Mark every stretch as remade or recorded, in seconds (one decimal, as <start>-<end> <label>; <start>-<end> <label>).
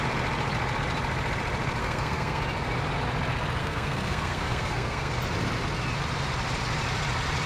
0.0-1.8 recorded; 1.8-2.4 remade; 2.4-3.6 recorded; 3.6-5.1 remade; 5.1-7.5 recorded